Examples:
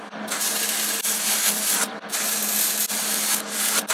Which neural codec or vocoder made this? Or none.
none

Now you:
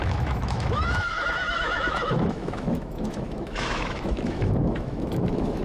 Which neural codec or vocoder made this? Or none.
autoencoder, DAC-VAE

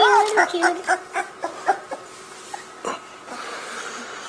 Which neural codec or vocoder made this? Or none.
none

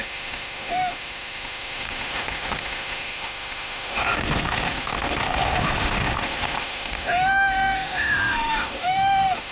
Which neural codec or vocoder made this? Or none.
autoencoder, DAC-VAE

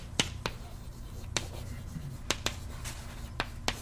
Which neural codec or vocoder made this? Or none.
none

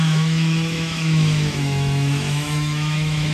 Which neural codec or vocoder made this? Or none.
autoencoder, DAC-VAE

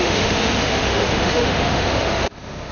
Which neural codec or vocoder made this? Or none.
autoencoder, DAC-VAE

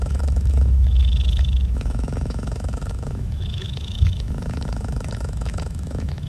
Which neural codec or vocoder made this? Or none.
autoencoder, DAC-VAE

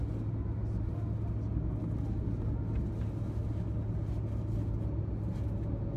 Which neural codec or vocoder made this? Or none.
none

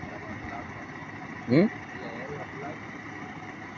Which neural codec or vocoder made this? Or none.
none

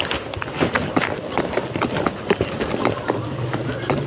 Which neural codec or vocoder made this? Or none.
none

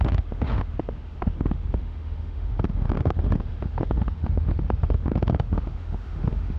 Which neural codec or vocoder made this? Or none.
autoencoder, DAC-VAE